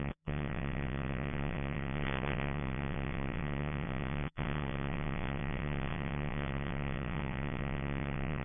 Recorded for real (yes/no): no